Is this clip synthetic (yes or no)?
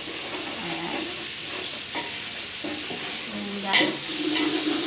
no